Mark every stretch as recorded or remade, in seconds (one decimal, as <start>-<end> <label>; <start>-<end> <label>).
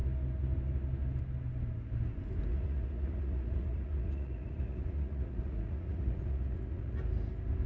0.0-2.5 recorded; 2.5-7.0 remade; 7.0-7.7 recorded